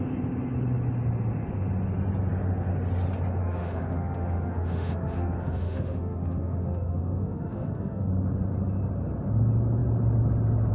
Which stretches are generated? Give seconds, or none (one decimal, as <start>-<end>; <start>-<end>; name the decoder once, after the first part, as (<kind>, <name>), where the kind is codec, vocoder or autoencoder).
3.4-8.1 (autoencoder, DAC-VAE)